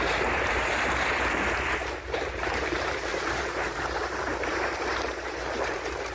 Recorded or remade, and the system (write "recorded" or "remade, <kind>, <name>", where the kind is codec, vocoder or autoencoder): remade, vocoder, BigVGAN v2